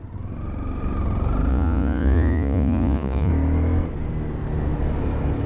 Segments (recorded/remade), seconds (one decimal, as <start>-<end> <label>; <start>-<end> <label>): 0.0-1.5 recorded; 1.5-3.3 remade; 3.3-5.5 recorded